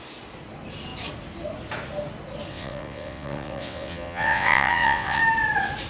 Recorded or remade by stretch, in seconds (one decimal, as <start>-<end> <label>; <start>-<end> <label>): 0.0-2.5 recorded; 2.5-5.2 remade; 5.2-5.9 recorded